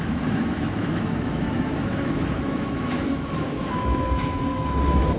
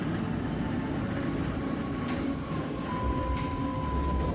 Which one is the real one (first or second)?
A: second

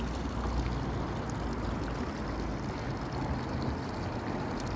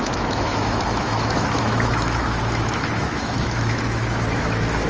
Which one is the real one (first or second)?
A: first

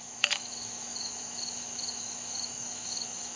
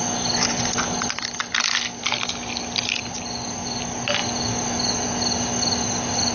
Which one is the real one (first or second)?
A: second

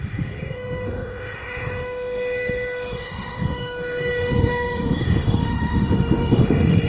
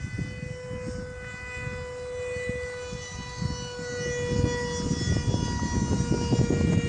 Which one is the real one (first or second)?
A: second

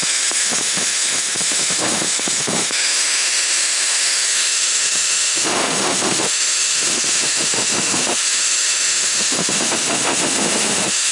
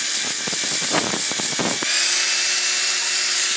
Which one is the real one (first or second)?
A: second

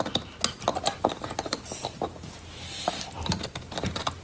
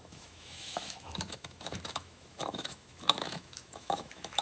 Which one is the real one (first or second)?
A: first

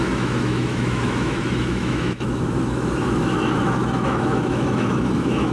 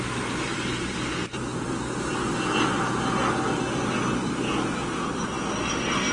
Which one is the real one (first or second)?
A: second